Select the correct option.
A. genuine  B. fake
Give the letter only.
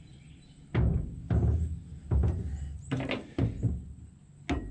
A